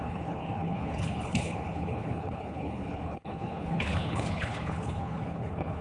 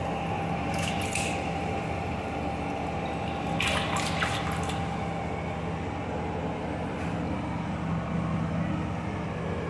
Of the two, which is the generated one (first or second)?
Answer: first